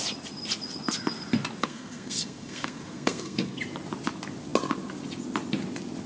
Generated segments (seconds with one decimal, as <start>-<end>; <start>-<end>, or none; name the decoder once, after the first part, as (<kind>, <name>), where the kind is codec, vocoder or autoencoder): 1.6-3.6 (codec, SNAC)